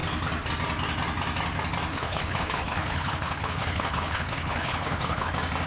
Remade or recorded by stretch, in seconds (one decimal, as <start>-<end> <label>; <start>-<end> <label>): 0.0-1.9 recorded; 1.9-5.3 remade; 5.3-5.7 recorded